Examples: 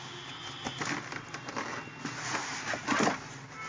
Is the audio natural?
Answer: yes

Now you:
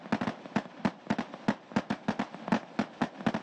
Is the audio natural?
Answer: yes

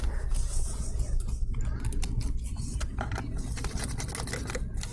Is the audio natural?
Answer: yes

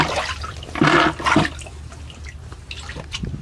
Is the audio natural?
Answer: yes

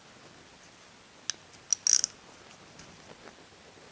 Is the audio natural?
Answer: yes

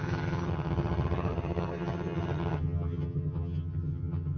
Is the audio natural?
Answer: no